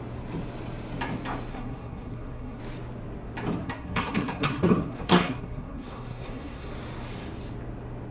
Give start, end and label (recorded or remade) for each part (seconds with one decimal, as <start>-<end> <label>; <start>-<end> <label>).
0.0-1.5 recorded; 1.5-2.6 remade; 2.6-3.6 recorded; 3.6-6.7 remade; 6.7-8.1 recorded